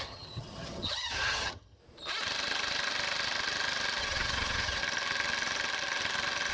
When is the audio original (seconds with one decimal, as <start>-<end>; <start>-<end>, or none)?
1.8-4.0; 4.8-6.5